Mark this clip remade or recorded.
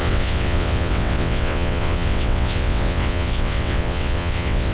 remade